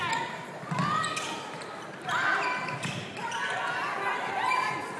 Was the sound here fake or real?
real